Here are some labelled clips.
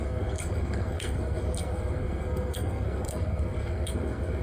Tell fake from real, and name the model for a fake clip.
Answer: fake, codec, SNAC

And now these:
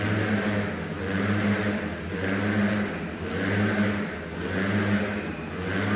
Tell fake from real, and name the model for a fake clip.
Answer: real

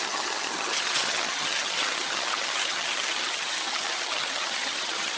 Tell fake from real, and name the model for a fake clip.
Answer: fake, vocoder, HiFi-GAN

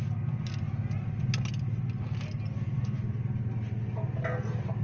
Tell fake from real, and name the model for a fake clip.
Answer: real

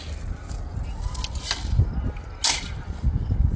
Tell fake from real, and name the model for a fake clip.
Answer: real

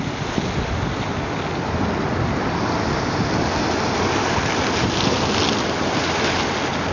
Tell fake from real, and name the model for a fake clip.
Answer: real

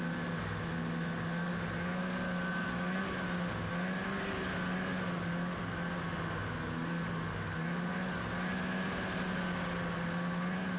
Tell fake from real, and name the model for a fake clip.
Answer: real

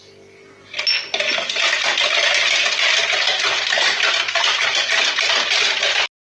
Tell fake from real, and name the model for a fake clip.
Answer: real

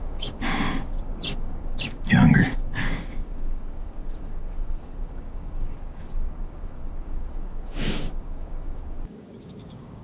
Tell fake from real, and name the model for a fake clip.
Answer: fake, codec, DAC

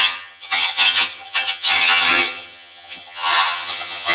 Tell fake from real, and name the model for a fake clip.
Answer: fake, vocoder, HiFi-GAN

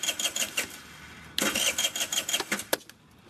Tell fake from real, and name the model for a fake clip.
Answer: real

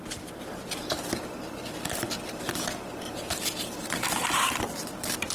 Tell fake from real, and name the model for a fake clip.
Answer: fake, vocoder, BigVGAN v2